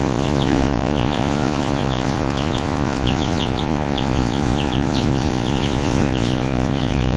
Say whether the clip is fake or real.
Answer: fake